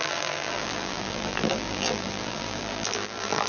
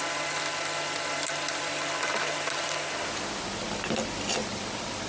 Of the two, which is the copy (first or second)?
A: first